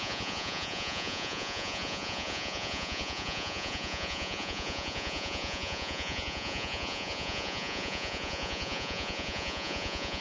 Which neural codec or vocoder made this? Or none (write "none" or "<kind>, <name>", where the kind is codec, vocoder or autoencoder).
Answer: vocoder, Vocos